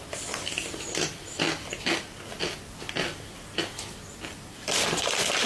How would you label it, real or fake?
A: real